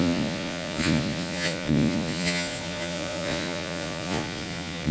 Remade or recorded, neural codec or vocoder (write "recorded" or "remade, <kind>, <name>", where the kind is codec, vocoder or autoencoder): remade, vocoder, Vocos